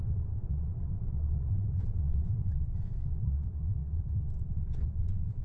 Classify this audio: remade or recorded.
remade